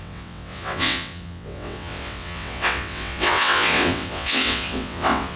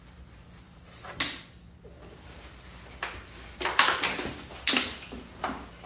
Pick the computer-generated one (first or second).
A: first